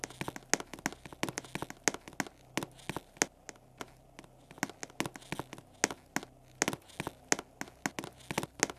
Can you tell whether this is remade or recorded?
recorded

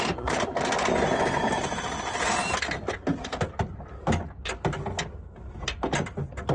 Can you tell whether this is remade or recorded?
recorded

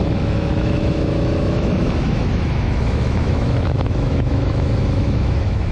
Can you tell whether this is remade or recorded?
remade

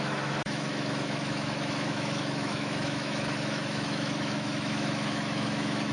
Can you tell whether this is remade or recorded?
remade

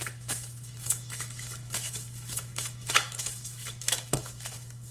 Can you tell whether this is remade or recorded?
remade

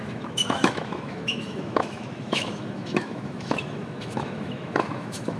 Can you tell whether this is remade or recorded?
remade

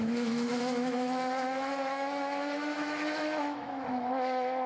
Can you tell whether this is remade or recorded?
remade